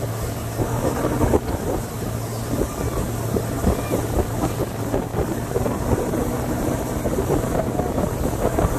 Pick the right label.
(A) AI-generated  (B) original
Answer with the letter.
B